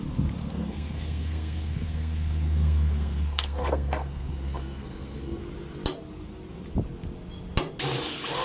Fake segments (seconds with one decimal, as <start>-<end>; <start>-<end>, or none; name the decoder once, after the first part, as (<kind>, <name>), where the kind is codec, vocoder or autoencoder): 0.4-5.4 (codec, SNAC)